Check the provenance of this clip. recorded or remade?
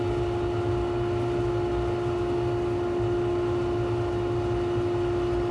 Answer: recorded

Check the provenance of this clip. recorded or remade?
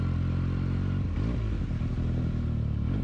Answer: recorded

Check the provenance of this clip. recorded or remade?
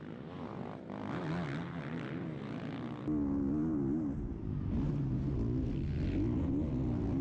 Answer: recorded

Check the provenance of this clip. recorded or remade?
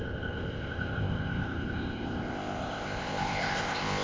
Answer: remade